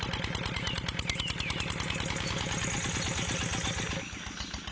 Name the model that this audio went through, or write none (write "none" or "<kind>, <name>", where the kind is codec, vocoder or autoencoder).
none